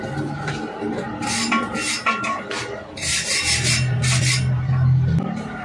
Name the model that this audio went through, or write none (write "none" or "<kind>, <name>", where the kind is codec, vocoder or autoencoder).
none